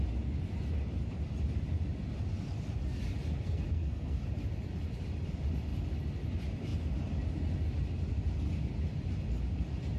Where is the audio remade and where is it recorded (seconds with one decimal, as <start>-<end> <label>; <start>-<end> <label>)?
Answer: 0.0-3.3 recorded; 3.3-4.2 remade; 4.2-10.0 recorded